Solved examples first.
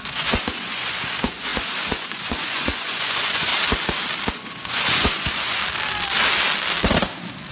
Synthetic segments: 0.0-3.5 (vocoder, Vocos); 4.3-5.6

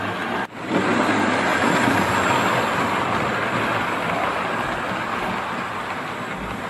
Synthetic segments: 1.5-2.1 (vocoder, BigVGAN v2)

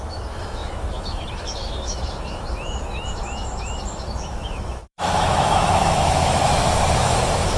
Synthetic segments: 0.0-7.6 (autoencoder, DAC-VAE)

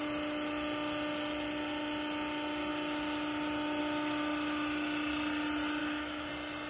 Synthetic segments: 5.8-6.3 (autoencoder, DAC-VAE)

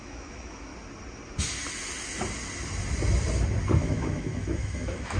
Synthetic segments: 0.0-0.7 (autoencoder, DAC-VAE); 3.8-5.2